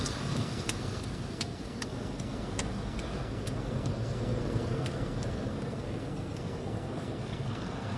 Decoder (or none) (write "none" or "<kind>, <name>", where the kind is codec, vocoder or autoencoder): codec, SNAC